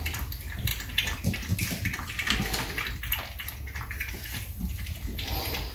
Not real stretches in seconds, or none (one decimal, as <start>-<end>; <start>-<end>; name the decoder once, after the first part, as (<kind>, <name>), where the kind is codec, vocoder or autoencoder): none